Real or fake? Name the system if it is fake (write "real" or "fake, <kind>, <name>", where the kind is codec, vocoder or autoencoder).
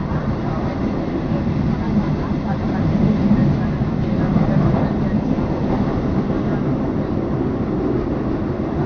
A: real